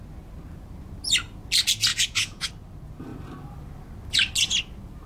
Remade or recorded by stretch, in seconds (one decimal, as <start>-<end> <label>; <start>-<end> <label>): 0.0-1.9 recorded; 1.9-2.5 remade; 2.5-5.1 recorded